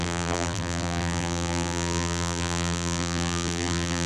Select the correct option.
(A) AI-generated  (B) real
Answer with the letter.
A